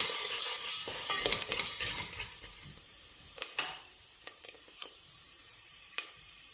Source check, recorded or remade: remade